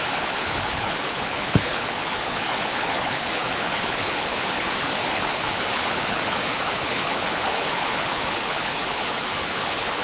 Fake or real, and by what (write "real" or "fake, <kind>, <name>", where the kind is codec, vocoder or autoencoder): fake, codec, HILCodec